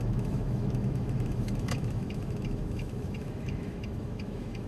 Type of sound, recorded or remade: remade